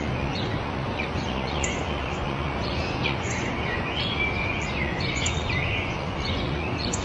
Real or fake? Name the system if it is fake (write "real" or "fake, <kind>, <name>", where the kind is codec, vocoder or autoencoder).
fake, vocoder, Vocos